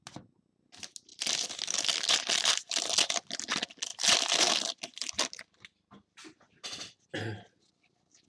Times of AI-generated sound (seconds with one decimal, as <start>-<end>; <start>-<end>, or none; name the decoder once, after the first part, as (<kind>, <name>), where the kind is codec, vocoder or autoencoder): none